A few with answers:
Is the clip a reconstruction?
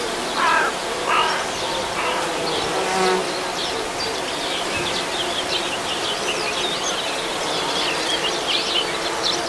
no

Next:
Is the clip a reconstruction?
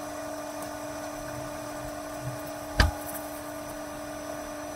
no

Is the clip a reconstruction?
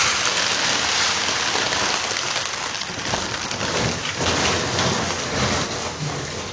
no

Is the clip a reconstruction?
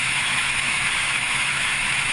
yes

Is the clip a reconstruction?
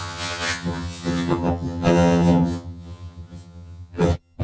yes